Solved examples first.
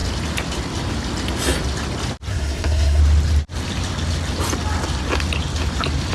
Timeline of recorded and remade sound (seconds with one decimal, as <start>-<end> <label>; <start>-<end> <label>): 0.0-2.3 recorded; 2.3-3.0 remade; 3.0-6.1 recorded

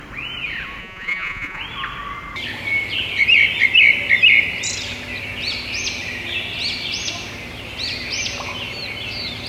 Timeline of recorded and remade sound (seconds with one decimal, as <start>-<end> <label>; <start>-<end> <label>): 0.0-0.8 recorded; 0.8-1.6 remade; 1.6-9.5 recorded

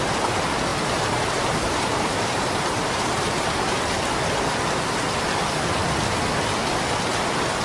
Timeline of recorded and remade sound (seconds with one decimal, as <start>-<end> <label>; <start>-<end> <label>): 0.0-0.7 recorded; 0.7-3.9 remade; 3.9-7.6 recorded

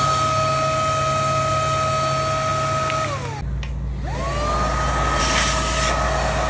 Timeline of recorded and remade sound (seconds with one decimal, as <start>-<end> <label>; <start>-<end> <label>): 0.0-6.5 recorded